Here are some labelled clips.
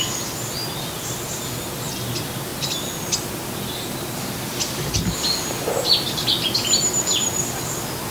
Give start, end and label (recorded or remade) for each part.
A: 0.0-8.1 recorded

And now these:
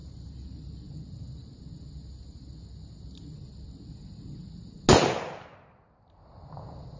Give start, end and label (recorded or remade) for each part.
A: 0.0-7.0 recorded

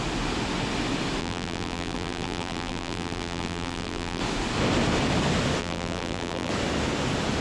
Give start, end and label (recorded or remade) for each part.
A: 0.0-1.2 recorded; 1.2-4.2 remade; 4.2-5.6 recorded; 5.6-6.5 remade; 6.5-7.4 recorded

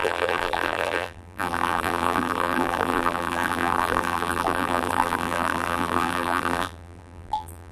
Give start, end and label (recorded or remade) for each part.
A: 0.0-7.7 remade

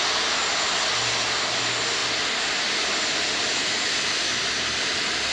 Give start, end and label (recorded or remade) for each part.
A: 0.0-5.3 recorded